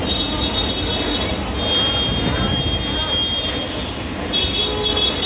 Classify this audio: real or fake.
real